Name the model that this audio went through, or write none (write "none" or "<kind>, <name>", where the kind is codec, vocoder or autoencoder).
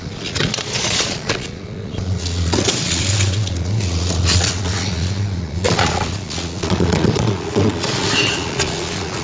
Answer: vocoder, Vocos